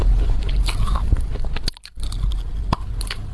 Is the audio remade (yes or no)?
no